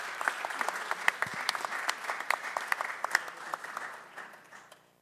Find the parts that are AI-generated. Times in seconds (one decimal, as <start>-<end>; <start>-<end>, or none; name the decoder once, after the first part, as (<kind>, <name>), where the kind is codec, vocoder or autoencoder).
none

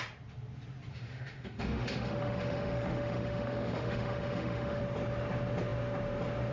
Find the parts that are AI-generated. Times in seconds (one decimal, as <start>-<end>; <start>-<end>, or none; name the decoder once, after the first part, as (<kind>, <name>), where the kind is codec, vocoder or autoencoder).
0.9-4.8 (autoencoder, DAC-VAE)

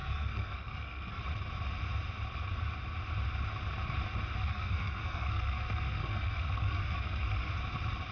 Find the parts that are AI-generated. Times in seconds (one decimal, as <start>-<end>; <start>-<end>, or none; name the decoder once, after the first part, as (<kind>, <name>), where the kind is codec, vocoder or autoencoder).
0.0-1.2 (codec, SNAC); 4.4-7.5

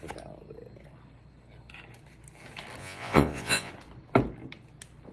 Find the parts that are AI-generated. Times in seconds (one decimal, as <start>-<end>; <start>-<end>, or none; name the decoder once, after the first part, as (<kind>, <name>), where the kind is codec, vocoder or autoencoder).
2.8-3.7 (vocoder, Vocos)

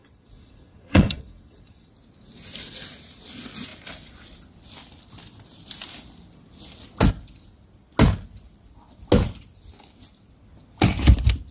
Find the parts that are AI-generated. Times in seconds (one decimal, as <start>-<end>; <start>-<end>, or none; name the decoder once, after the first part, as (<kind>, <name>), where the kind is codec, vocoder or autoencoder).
0.0-1.9 (vocoder, Vocos)

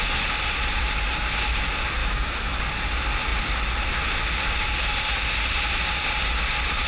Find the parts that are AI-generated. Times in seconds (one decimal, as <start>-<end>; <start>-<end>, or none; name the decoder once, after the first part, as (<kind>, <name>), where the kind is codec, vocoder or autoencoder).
2.0-2.6 (autoencoder, DAC-VAE)